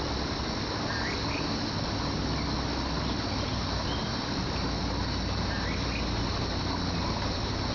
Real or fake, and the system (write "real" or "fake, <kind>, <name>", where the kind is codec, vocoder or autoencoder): real